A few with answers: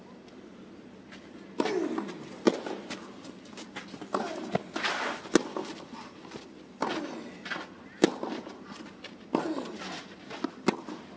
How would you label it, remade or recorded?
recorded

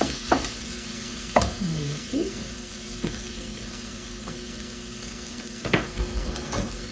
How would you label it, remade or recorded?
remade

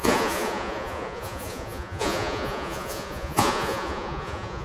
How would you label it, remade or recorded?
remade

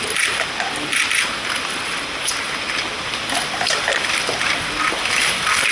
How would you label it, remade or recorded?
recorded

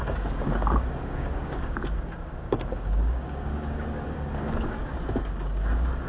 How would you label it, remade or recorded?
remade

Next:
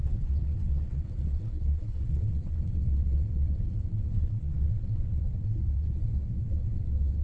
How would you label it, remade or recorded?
remade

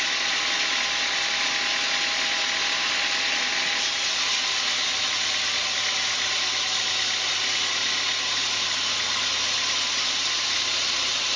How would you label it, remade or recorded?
recorded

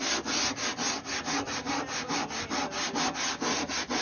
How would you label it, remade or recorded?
recorded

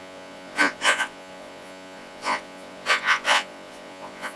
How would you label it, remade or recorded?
remade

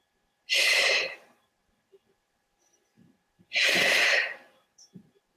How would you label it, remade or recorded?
remade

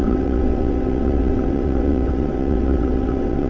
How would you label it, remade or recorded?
remade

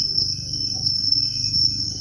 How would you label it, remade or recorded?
remade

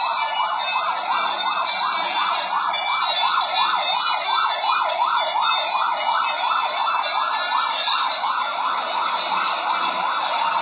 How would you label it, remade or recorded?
recorded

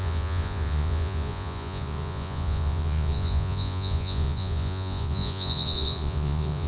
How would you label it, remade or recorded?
remade